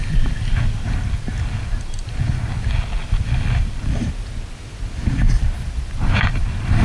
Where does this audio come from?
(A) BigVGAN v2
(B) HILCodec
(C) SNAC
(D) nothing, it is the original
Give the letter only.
D